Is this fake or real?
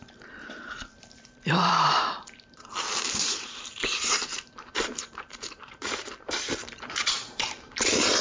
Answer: fake